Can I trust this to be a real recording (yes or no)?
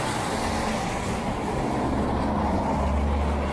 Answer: yes